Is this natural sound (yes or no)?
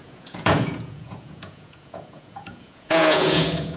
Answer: no